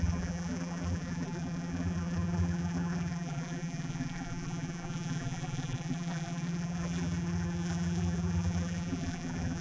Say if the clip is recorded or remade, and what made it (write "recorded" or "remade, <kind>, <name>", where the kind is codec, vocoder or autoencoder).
remade, vocoder, BigVGAN v2